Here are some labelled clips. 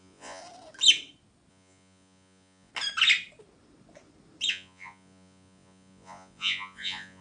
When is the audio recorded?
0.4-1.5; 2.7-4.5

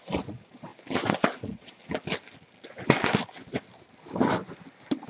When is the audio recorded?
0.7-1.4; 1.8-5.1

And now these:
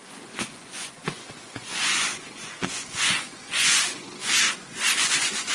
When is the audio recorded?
none

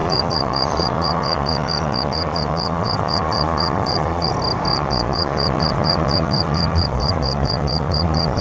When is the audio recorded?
4.3-4.7

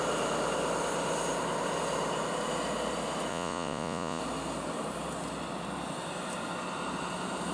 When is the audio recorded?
0.0-3.3; 4.2-7.5

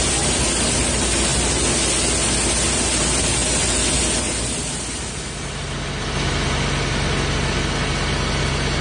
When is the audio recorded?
0.0-8.8